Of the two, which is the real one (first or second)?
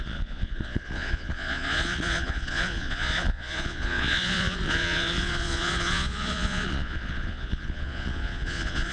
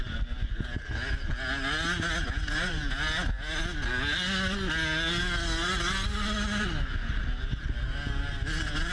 second